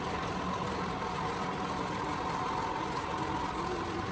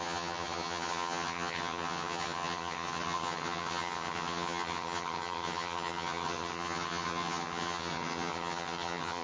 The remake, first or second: second